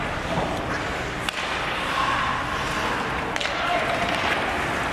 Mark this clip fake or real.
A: real